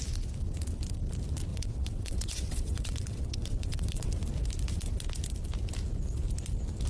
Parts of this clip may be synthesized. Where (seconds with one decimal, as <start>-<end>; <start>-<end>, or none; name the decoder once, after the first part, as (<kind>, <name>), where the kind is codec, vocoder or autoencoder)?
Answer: 1.5-4.1 (vocoder, WaveNeXt)